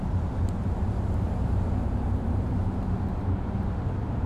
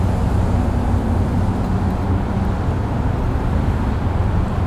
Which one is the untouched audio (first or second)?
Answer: second